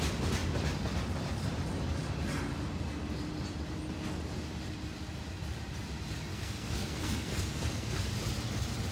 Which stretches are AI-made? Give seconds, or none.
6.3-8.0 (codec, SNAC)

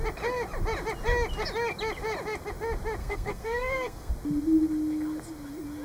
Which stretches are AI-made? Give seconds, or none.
3.0-4.1 (codec, SNAC)

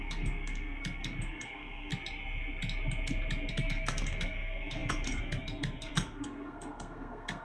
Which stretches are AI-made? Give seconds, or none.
0.0-1.9 (codec, SNAC); 3.5-7.4

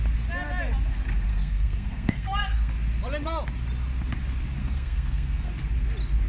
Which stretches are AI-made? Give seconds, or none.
1.3-2.7 (codec, SNAC); 4.6-5.5

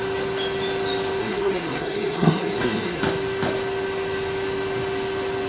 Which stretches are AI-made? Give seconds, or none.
1.2-3.0 (codec, SNAC)